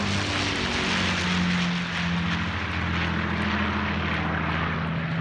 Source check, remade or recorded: recorded